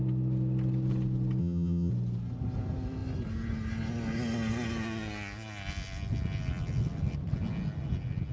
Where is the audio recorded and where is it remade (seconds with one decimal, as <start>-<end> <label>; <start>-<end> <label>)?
0.0-1.4 recorded; 1.4-1.9 remade; 1.9-8.3 recorded